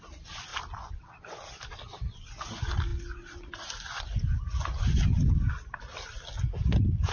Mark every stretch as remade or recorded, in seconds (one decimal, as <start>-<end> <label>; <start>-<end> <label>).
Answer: 0.0-7.1 recorded